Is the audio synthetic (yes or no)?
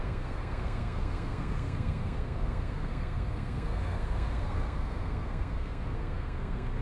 yes